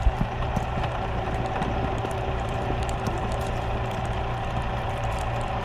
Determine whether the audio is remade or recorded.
remade